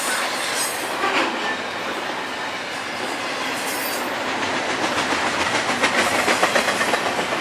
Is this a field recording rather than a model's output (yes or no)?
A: yes